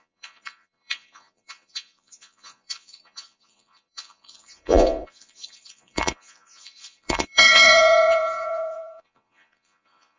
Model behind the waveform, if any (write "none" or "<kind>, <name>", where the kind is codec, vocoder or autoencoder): vocoder, Vocos